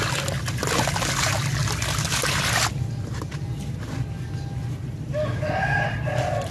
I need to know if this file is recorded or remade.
recorded